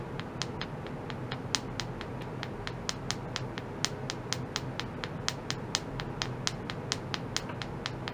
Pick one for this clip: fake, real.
real